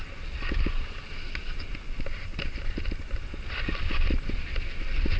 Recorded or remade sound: recorded